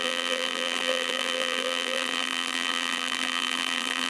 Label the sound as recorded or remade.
remade